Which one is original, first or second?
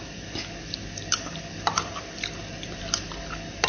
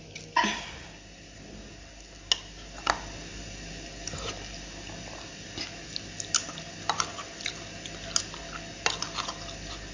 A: second